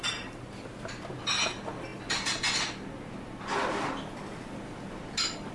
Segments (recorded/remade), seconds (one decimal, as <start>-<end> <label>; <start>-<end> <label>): 0.0-5.5 recorded